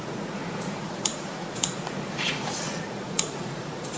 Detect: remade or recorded remade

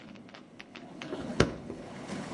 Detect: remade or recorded remade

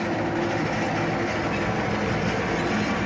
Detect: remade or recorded recorded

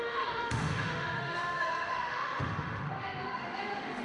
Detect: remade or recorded remade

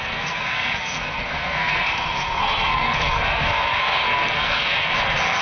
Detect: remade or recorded remade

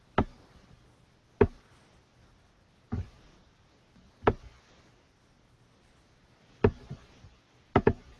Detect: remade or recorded recorded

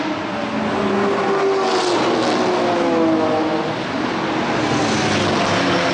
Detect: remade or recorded recorded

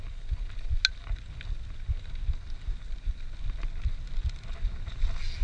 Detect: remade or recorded recorded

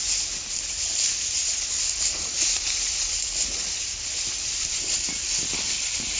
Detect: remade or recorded recorded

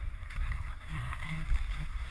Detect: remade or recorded remade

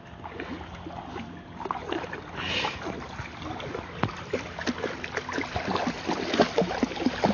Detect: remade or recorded recorded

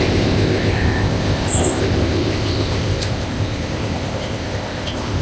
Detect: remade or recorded remade